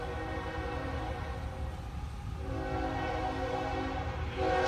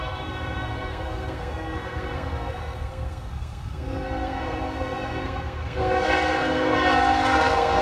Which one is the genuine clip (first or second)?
first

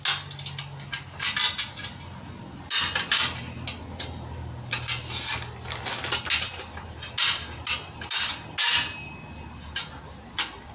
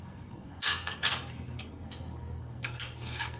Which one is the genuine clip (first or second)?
first